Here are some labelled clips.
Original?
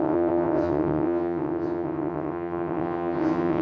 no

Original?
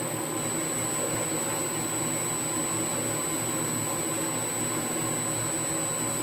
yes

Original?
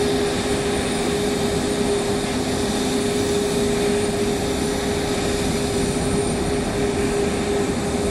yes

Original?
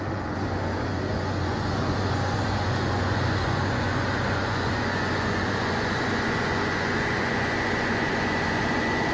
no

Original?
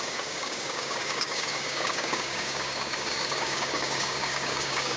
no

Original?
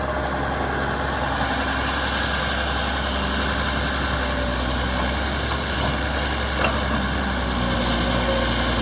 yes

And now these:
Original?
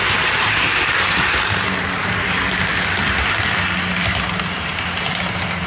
yes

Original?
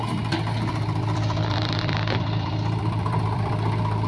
no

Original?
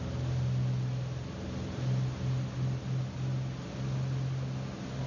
yes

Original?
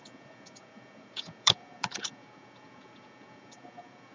no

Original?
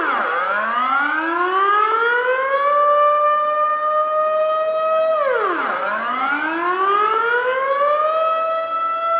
yes